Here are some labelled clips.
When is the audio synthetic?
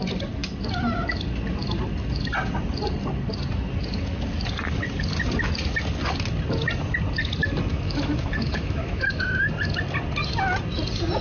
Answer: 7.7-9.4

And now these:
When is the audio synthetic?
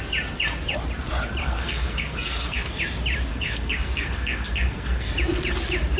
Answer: 1.4-2.8; 3.3-5.1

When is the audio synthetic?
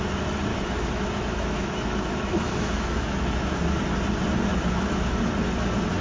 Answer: 0.5-3.8; 4.5-5.2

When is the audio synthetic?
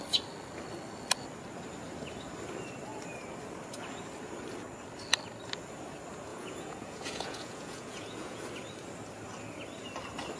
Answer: 6.3-8.4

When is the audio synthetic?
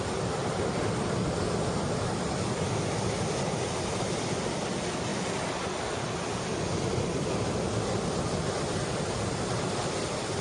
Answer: none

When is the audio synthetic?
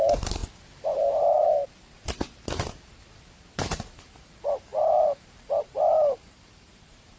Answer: 0.0-0.4; 1.1-1.6; 3.1-7.2